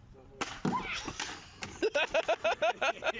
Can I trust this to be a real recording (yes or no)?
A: yes